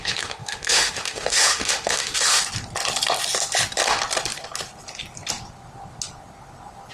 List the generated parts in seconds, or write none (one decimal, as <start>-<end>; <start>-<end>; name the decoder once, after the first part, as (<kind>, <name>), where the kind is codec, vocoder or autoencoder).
0.0-2.4 (autoencoder, DAC-VAE)